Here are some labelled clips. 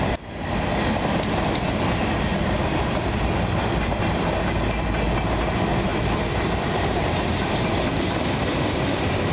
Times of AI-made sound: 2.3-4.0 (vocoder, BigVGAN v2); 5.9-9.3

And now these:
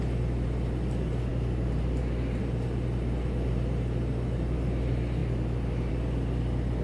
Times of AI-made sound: 0.0-1.3 (vocoder, BigVGAN v2); 2.4-5.2; 5.9-6.8

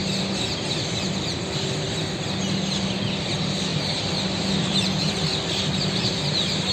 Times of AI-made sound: 3.7-6.2 (vocoder, BigVGAN v2)

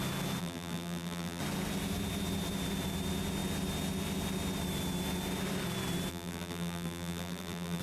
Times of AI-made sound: 0.4-1.4 (vocoder, BigVGAN v2); 6.1-7.8

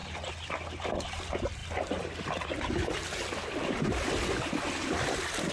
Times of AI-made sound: 1.6-2.6 (vocoder, BigVGAN v2)

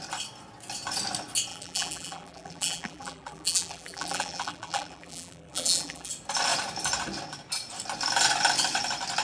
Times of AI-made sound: 1.5-6.1 (vocoder, BigVGAN v2)